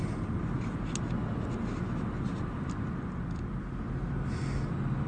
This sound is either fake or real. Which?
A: real